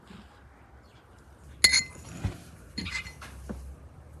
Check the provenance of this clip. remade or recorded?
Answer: recorded